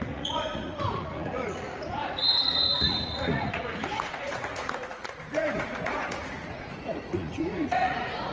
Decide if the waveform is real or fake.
fake